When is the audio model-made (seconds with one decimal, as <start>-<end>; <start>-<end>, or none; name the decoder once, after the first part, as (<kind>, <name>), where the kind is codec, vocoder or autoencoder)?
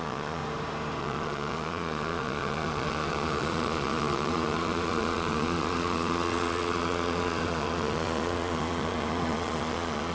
0.0-0.4 (vocoder, Vocos); 1.0-10.1